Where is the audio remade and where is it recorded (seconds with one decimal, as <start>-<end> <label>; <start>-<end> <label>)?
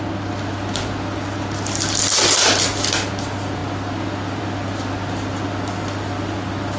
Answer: 0.0-6.8 recorded